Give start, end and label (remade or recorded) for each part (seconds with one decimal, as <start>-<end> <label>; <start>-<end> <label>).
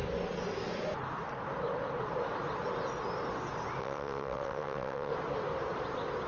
0.0-3.8 recorded; 3.8-5.1 remade; 5.1-6.3 recorded